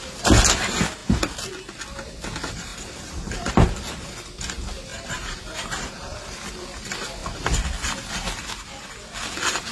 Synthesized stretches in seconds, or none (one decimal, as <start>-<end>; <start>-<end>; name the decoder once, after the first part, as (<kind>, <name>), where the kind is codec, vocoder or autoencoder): 2.7-3.5 (vocoder, BigVGAN v2); 4.9-6.5